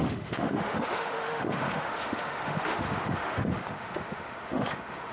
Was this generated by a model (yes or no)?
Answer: yes